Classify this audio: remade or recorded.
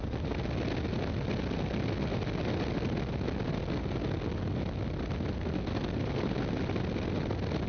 recorded